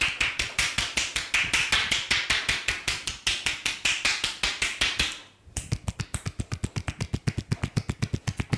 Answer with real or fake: real